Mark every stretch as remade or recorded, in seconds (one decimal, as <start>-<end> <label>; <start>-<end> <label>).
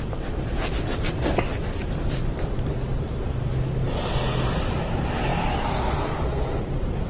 0.0-7.1 recorded